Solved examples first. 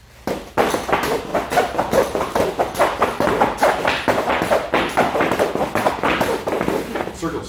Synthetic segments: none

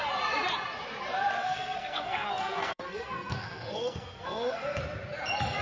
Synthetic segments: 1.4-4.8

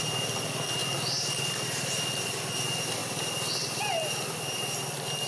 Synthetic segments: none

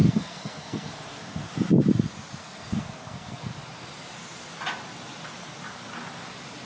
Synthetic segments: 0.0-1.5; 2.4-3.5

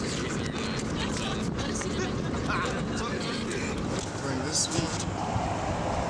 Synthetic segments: none